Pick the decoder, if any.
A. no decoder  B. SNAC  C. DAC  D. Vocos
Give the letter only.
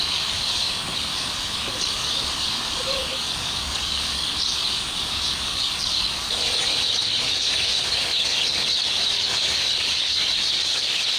C